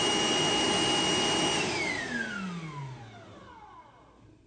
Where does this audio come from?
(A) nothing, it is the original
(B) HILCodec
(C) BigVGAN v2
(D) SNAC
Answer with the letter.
A